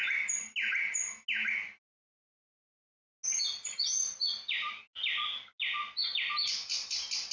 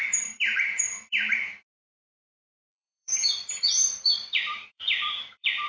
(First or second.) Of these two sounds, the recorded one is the first